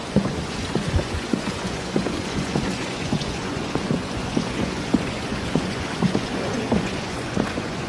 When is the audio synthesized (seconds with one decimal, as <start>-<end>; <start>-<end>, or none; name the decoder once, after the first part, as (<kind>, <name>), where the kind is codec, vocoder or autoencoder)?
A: 0.0-7.9 (vocoder, Vocos)